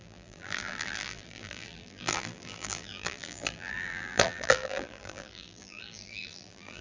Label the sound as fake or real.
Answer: fake